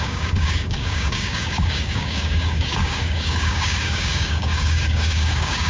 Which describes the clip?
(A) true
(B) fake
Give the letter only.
B